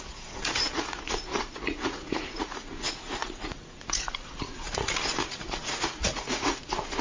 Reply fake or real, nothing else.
fake